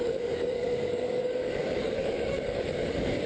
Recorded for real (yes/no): no